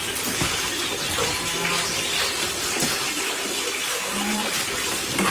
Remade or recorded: recorded